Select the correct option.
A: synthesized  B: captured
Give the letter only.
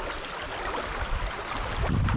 B